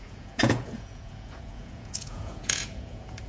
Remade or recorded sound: remade